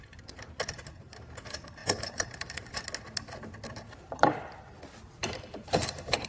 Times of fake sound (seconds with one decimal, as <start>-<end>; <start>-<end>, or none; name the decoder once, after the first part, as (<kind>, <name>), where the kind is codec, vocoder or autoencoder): 1.8-2.8 (vocoder, BigVGAN v2); 5.2-6.3